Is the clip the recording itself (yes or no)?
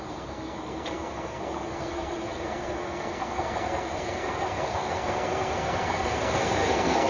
no